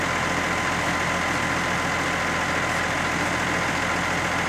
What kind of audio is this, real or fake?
real